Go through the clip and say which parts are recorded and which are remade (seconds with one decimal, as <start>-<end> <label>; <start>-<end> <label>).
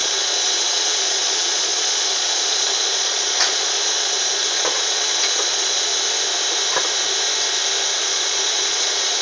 0.0-5.9 remade; 5.9-8.0 recorded; 8.0-9.2 remade